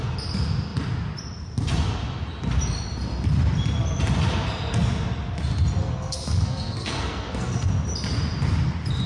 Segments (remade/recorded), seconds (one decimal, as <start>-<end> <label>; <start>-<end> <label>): 0.0-5.8 recorded; 5.8-7.7 remade; 7.7-9.1 recorded